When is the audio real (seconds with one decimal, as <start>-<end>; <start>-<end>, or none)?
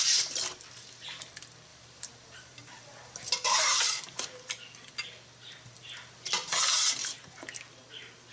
0.0-1.7; 4.2-8.3